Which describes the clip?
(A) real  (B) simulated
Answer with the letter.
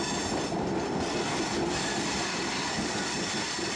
A